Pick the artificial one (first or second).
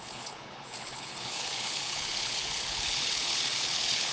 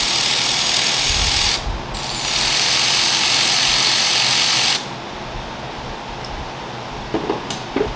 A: first